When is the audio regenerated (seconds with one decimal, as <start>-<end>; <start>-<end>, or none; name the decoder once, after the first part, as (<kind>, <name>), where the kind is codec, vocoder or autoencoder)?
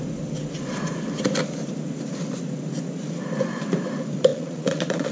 4.3-5.1 (vocoder, Vocos)